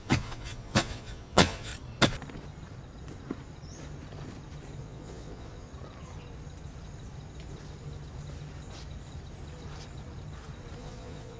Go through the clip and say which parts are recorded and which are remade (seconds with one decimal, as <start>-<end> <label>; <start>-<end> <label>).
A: 0.0-1.7 remade; 1.7-4.8 recorded; 4.8-5.7 remade; 5.7-10.8 recorded; 10.8-11.4 remade